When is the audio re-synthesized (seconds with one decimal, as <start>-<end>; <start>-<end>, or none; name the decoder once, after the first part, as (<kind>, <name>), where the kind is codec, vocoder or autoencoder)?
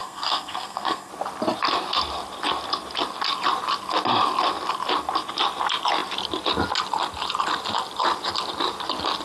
0.0-1.1 (codec, SNAC)